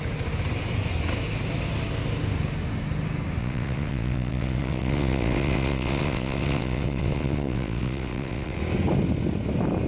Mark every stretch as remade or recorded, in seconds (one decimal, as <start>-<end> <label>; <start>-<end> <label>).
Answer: 0.0-3.4 recorded; 3.4-8.6 remade; 8.6-9.9 recorded